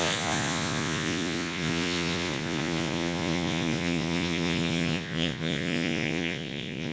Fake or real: fake